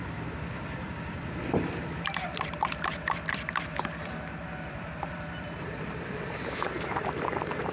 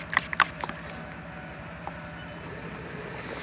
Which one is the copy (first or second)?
first